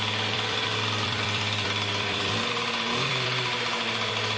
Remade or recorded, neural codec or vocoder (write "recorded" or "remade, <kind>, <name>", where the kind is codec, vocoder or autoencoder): remade, vocoder, BigVGAN v2